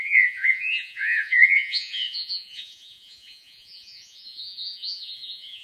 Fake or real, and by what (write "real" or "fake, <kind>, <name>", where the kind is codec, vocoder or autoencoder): fake, vocoder, Vocos